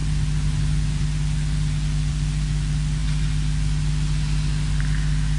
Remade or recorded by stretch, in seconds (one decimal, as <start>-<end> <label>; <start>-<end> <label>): 0.0-5.4 recorded